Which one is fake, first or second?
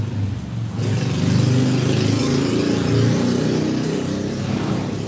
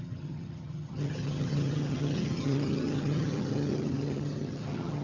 second